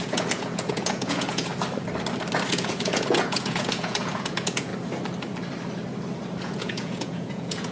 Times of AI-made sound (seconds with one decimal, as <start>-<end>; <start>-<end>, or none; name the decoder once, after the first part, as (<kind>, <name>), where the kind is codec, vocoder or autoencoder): 0.0-1.5 (vocoder, Vocos); 2.5-4.7; 6.4-7.7